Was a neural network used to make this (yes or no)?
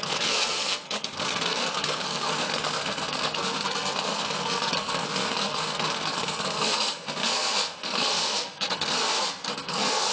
yes